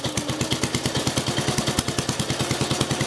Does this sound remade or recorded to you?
recorded